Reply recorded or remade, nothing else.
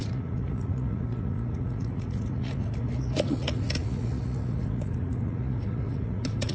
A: remade